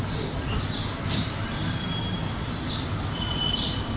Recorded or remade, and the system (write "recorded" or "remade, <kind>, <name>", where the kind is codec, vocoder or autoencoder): remade, vocoder, BigVGAN v2